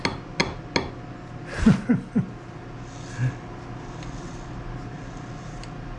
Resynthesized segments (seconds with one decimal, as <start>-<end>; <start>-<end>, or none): none